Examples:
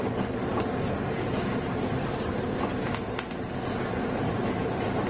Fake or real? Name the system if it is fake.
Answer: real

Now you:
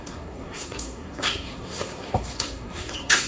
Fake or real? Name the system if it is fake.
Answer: fake, codec, SNAC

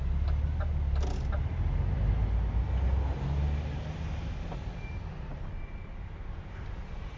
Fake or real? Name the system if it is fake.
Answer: real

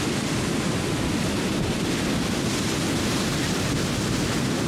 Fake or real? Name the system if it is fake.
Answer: real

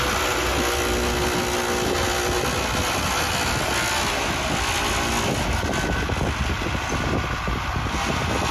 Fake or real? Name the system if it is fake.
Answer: real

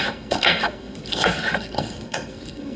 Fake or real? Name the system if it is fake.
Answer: fake, codec, SNAC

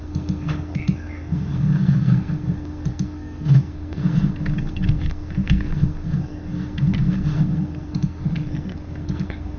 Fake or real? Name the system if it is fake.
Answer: fake, codec, SNAC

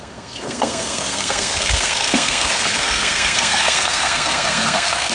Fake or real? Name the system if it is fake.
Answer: fake, codec, SNAC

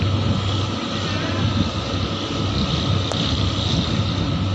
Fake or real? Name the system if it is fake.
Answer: real